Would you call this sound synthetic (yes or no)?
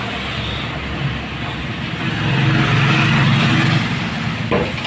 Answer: no